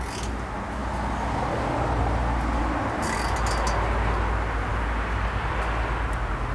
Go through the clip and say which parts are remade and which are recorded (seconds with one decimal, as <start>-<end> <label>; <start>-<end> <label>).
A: 0.0-6.5 recorded

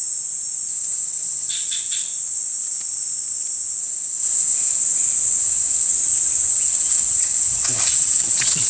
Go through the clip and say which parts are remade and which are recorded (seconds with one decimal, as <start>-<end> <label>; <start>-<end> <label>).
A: 0.0-0.7 recorded; 0.7-2.1 remade; 2.1-3.8 recorded; 3.8-4.8 remade; 4.8-5.4 recorded; 5.4-5.9 remade; 5.9-6.5 recorded; 6.5-8.7 remade

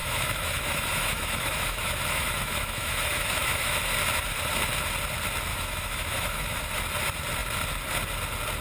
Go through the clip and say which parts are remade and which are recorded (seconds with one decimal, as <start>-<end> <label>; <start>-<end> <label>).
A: 0.0-3.8 remade; 3.8-5.5 recorded; 5.5-6.6 remade; 6.6-8.6 recorded